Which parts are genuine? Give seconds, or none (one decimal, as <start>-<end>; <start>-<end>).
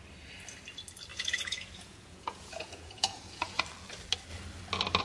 0.0-1.1; 3.6-5.0